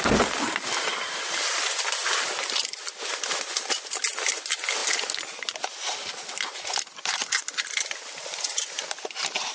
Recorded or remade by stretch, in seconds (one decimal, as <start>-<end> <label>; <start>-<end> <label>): 0.0-9.5 recorded